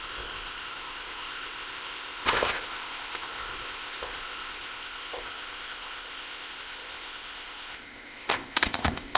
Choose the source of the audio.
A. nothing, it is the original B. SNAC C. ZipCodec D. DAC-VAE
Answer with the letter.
C